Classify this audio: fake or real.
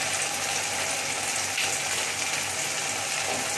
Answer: real